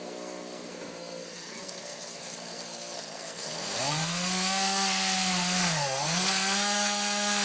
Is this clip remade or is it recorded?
remade